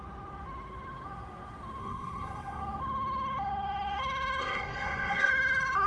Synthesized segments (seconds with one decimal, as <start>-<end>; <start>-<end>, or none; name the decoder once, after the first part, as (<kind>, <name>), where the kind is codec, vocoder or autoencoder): 1.8-2.6 (codec, SNAC); 4.4-5.3